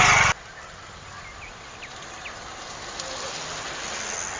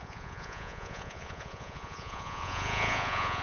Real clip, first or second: first